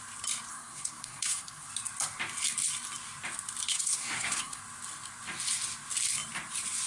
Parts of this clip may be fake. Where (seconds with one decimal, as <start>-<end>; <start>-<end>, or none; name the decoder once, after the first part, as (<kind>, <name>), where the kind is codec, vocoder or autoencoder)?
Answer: 0.5-1.7 (codec, SNAC); 3.7-4.6